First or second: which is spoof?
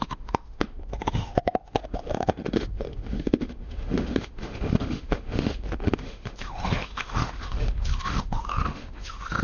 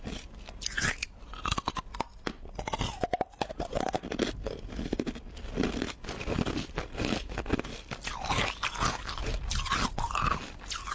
first